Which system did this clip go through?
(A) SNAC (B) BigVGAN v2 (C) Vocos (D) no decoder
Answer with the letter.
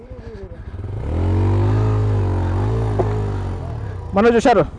D